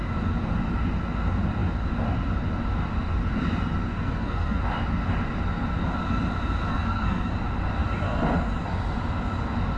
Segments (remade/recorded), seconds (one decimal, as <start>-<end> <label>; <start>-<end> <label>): 0.0-3.9 recorded; 3.9-4.6 remade; 4.6-6.7 recorded; 6.7-7.3 remade; 7.3-9.8 recorded